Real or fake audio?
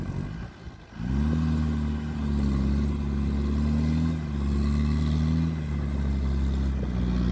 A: real